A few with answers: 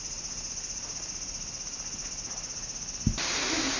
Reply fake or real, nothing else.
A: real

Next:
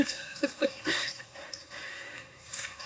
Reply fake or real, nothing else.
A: fake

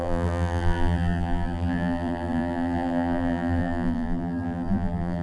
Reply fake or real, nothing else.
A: fake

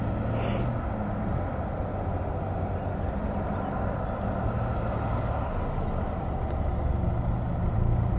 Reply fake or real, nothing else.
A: real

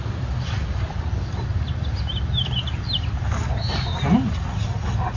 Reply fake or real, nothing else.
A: real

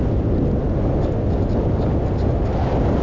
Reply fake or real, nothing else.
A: real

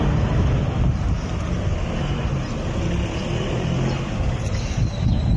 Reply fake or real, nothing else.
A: real